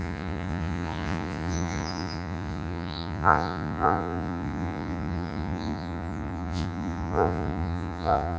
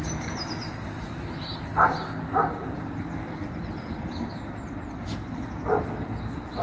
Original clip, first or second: second